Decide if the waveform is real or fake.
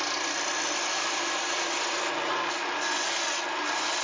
real